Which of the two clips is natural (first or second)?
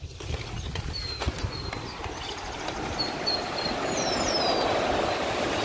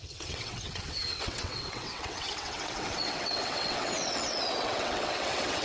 first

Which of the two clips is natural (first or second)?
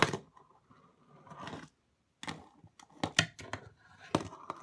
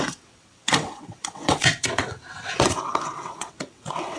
first